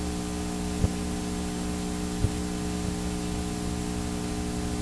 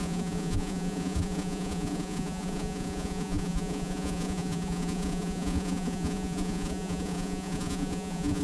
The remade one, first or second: second